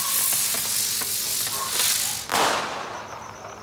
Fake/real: real